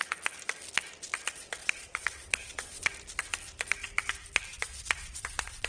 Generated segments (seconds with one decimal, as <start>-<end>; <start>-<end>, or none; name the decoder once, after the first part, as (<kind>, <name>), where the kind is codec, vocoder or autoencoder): 1.6-2.9 (vocoder, WaveNeXt); 4.5-5.7